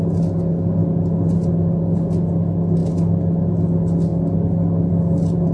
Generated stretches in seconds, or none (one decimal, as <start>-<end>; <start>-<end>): none